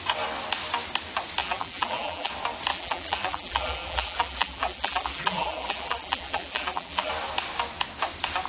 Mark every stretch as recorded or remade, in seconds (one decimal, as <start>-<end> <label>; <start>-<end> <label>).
0.0-1.4 recorded; 1.4-2.3 remade; 2.3-2.7 recorded; 2.7-7.1 remade; 7.1-8.5 recorded